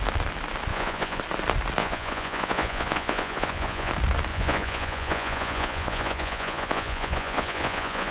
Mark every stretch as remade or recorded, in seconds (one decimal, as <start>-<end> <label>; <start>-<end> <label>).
0.0-0.7 recorded; 0.7-1.2 remade; 1.2-1.8 recorded; 1.8-3.9 remade; 3.9-4.3 recorded; 4.3-8.1 remade